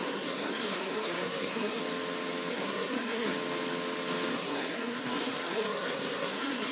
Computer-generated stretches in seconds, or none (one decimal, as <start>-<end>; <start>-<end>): 0.0-1.8; 2.5-3.3; 4.3-6.7